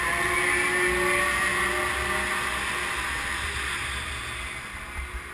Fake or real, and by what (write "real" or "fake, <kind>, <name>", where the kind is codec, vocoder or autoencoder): real